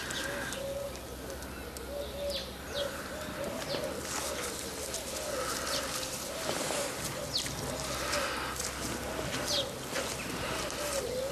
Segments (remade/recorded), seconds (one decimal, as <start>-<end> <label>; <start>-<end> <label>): 0.0-11.3 recorded